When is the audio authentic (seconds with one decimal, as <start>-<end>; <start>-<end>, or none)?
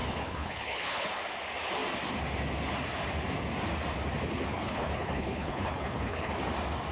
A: 1.1-4.5; 6.3-6.9